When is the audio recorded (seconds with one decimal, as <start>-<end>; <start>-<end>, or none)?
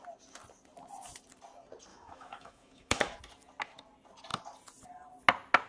0.0-1.9; 3.2-5.7